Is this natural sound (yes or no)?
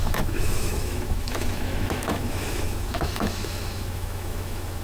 no